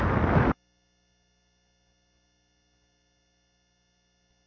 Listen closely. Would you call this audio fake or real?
real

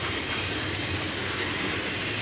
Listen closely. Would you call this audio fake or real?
real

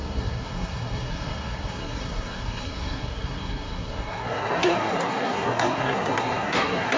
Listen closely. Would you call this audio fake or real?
fake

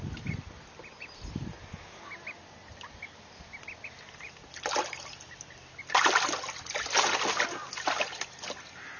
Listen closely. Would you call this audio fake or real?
real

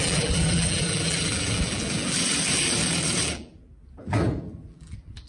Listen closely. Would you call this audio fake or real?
fake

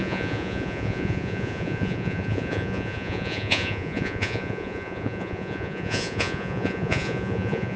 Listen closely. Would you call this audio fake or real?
fake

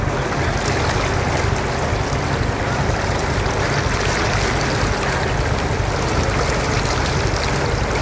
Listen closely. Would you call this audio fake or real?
real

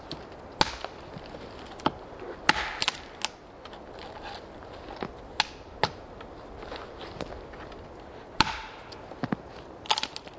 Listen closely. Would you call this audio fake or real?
real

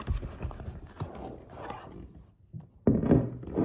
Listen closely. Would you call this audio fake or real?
real